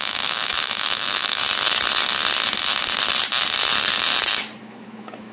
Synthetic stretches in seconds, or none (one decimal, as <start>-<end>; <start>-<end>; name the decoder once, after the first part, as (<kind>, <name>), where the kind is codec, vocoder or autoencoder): 0.0-1.4 (autoencoder, DAC-VAE); 4.6-5.3